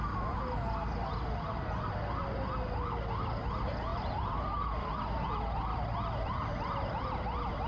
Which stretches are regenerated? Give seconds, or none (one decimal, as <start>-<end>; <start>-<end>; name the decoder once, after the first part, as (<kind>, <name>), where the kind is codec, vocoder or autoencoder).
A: none